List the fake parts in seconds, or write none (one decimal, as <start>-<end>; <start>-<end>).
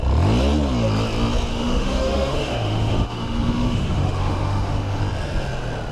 1.5-5.0